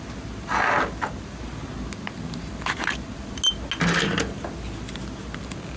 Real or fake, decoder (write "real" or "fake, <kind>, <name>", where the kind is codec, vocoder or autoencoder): real